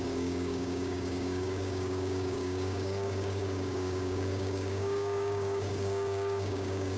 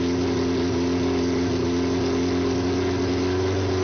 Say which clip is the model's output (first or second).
first